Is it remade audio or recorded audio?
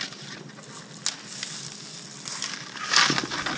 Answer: recorded